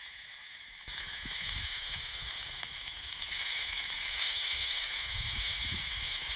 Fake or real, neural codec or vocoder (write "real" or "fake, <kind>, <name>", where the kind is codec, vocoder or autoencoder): fake, autoencoder, DAC-VAE